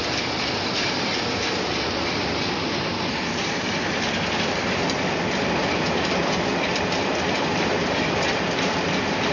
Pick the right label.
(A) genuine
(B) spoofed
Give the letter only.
B